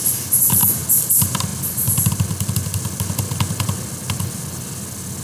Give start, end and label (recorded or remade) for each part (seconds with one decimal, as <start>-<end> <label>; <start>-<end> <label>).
0.0-5.2 recorded